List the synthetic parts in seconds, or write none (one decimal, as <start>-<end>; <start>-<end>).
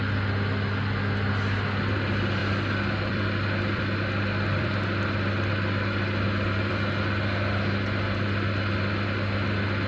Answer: 2.4-6.7